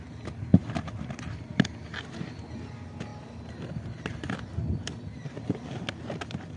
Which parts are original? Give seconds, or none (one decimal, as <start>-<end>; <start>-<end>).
0.0-6.6